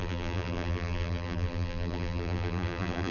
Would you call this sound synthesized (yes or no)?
yes